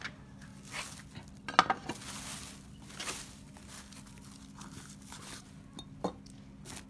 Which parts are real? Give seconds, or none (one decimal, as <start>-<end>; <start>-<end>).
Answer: 0.0-6.9